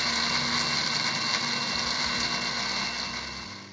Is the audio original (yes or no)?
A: yes